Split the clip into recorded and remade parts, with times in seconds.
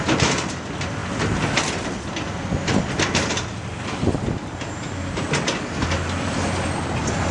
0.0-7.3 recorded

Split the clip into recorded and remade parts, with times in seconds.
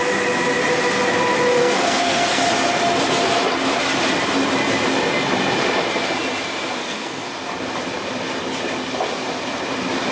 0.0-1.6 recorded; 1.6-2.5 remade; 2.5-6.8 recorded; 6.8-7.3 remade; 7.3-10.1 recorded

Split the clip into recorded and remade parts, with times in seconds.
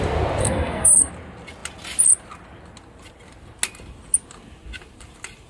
0.0-0.4 recorded; 0.4-1.1 remade; 1.1-5.5 recorded